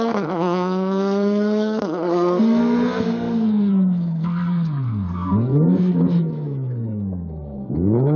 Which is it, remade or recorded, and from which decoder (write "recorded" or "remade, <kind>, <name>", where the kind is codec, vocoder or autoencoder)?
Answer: remade, codec, SNAC